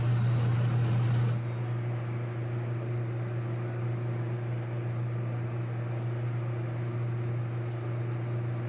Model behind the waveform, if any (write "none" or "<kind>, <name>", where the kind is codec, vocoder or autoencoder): none